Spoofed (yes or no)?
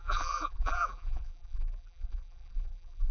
yes